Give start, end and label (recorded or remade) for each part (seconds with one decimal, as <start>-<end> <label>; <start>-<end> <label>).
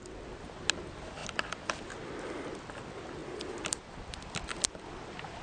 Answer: 0.0-5.4 recorded